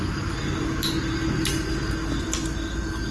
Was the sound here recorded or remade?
recorded